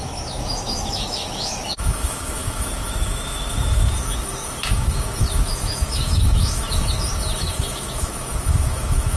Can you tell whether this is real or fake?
fake